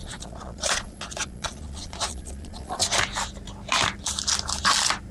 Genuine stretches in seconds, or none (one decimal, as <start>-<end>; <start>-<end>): 2.8-5.1